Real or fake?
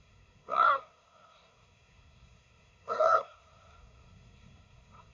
fake